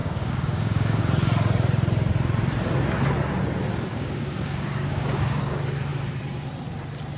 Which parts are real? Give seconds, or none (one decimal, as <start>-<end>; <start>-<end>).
1.0-3.9; 5.4-7.2